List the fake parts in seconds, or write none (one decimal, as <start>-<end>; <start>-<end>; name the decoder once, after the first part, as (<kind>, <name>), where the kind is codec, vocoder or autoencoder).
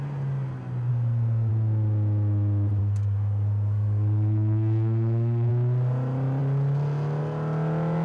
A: 0.9-1.5 (codec, SNAC); 2.8-5.5